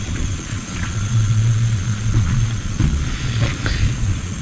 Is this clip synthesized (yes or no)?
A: yes